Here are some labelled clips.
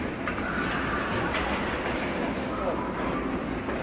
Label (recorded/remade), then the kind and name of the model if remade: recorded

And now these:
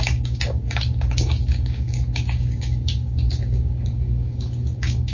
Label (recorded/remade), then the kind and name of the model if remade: remade, codec, DAC